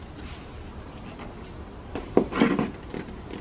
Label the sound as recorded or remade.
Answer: recorded